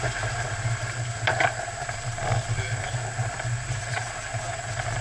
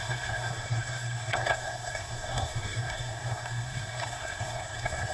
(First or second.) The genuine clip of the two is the first